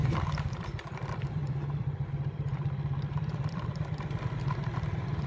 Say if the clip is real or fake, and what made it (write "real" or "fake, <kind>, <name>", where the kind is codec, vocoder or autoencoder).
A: fake, vocoder, BigVGAN v2